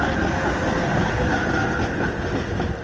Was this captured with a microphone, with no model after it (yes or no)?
yes